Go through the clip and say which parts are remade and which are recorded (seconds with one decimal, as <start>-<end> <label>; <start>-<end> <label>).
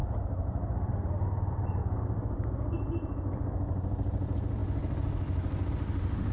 0.0-6.3 recorded